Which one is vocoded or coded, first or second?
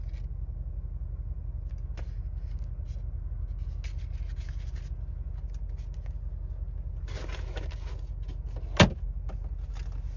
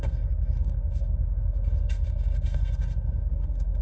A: second